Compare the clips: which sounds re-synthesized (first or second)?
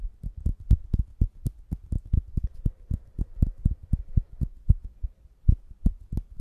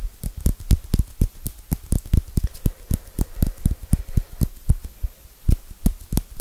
first